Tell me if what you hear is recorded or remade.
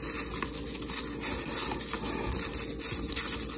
recorded